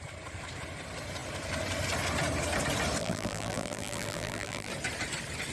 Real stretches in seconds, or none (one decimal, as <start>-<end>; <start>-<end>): 0.0-3.0; 4.7-5.5